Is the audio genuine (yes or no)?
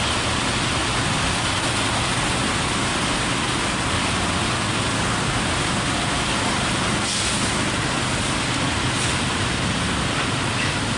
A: yes